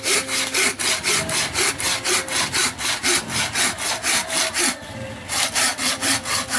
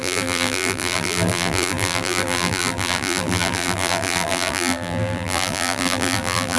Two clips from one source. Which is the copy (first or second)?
second